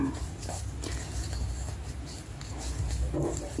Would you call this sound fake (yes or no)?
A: no